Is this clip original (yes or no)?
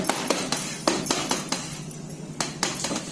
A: yes